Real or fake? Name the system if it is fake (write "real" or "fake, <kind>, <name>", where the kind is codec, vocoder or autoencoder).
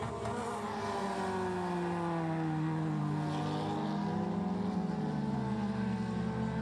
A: real